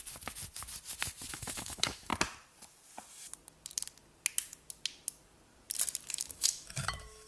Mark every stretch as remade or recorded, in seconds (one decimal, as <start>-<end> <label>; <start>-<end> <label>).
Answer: 0.0-1.3 recorded; 1.3-2.1 remade; 2.1-6.1 recorded; 6.1-7.3 remade